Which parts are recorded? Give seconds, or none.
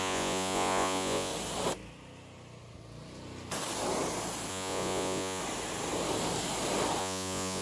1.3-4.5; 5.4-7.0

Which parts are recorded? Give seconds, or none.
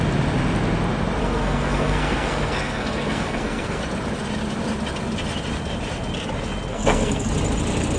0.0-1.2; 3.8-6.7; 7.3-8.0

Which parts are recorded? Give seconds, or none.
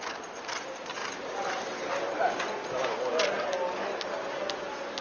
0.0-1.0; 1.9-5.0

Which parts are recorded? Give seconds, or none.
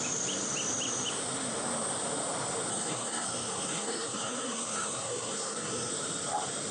0.0-2.7; 5.9-6.7